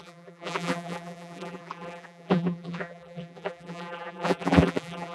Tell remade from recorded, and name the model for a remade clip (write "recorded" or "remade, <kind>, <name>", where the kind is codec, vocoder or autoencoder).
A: remade, vocoder, BigVGAN v2